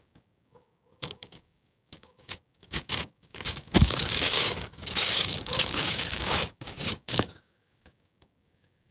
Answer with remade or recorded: remade